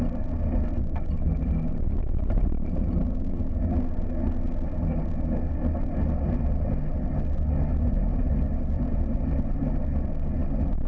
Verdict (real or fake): real